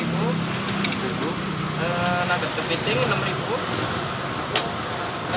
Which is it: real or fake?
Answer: real